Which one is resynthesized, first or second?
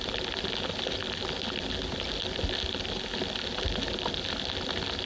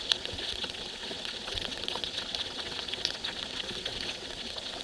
second